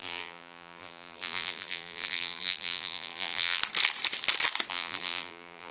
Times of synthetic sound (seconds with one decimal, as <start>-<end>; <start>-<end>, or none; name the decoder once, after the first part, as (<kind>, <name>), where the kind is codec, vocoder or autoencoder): 0.0-3.6 (vocoder, BigVGAN v2); 4.7-5.7